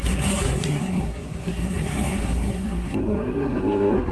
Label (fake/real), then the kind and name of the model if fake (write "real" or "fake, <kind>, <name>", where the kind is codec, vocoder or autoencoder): fake, codec, SNAC